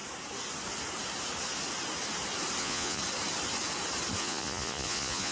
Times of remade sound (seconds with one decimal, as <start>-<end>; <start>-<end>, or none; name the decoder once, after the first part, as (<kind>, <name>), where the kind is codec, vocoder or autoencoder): 2.6-3.0 (vocoder, Vocos); 4.2-5.3